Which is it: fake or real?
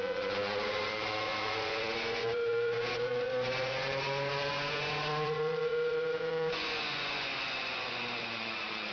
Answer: fake